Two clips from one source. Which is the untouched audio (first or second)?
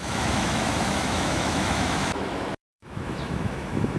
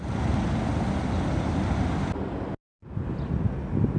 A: second